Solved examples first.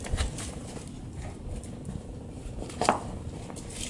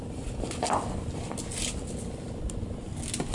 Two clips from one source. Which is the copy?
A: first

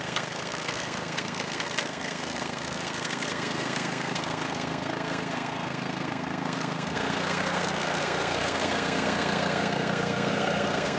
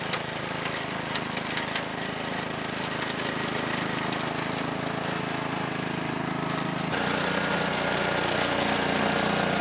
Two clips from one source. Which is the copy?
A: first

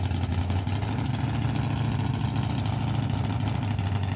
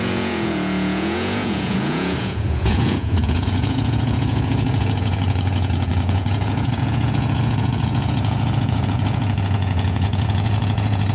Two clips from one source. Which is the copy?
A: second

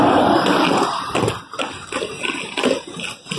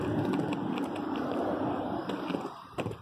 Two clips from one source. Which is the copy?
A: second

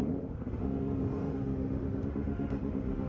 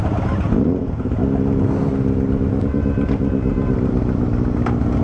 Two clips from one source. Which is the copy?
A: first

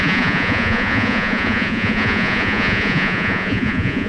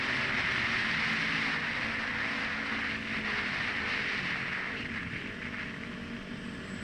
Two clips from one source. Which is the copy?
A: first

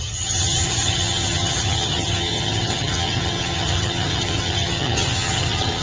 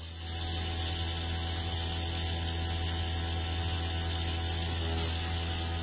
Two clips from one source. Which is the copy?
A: first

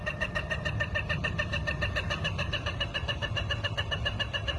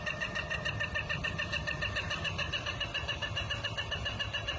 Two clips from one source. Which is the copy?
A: first